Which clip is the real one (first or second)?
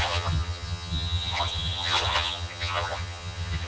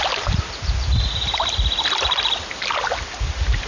second